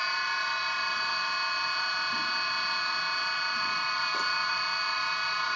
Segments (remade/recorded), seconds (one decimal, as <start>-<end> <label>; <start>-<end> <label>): 0.0-5.6 recorded